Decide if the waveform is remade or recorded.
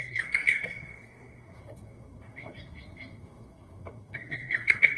remade